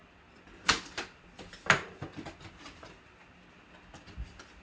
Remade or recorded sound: recorded